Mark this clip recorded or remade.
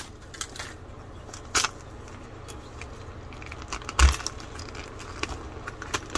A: recorded